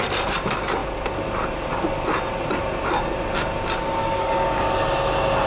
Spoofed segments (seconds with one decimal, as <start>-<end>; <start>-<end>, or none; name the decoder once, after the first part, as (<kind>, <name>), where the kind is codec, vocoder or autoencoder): 4.0-4.7 (codec, DAC)